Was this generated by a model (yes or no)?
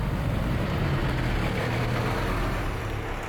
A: no